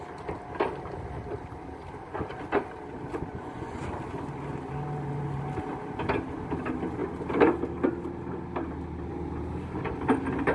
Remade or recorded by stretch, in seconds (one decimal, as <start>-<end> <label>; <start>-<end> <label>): 0.0-3.3 recorded; 3.3-3.8 remade; 3.8-10.5 recorded